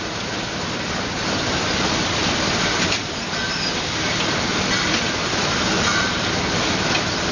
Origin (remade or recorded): recorded